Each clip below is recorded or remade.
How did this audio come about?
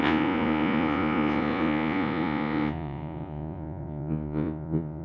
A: remade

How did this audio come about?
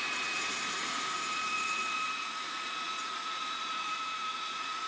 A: remade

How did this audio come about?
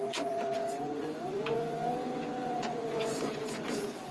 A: remade